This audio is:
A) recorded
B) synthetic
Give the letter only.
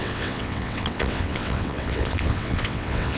B